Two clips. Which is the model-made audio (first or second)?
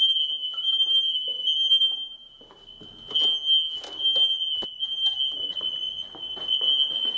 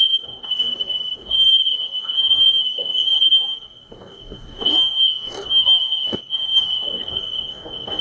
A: second